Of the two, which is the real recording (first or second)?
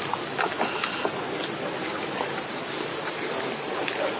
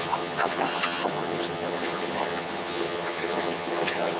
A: first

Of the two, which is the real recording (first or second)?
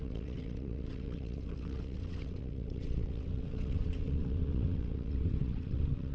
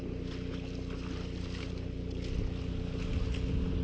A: second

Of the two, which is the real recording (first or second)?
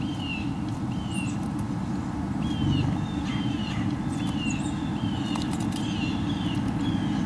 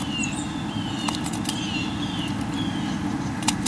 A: second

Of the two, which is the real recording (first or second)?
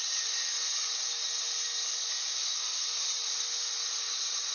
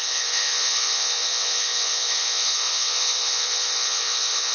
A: first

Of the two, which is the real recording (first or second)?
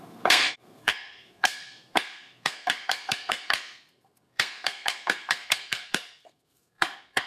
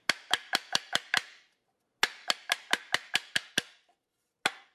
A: second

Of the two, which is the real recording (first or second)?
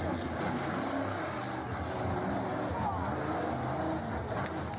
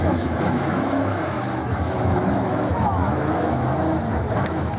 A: first